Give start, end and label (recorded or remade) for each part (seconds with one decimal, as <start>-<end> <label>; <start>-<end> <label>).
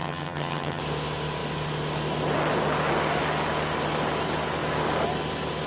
0.0-0.8 remade; 0.8-5.7 recorded